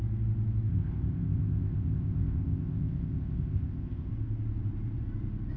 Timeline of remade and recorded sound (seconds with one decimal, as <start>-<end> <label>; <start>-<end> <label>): 0.0-0.7 recorded; 0.7-4.1 remade; 4.1-5.6 recorded